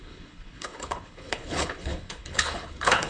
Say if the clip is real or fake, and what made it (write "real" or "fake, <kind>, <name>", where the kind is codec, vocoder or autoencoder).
fake, codec, HILCodec